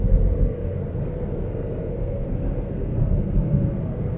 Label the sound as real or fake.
fake